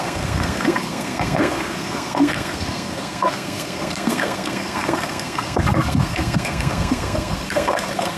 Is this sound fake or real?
fake